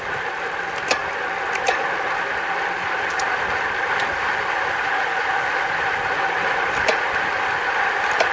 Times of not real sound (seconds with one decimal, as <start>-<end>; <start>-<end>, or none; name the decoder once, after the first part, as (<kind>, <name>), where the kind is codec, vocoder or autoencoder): none